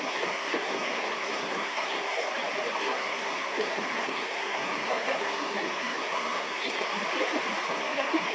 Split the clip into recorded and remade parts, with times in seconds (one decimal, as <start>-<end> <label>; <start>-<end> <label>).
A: 0.0-2.3 remade; 2.3-2.8 recorded; 2.8-6.9 remade; 6.9-7.7 recorded; 7.7-8.3 remade